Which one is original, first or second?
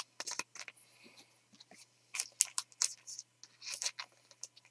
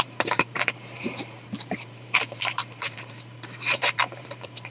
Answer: first